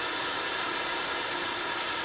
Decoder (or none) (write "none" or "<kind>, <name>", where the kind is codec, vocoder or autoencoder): vocoder, BigVGAN v2